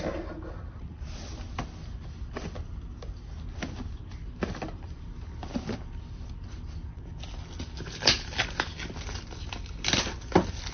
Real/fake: real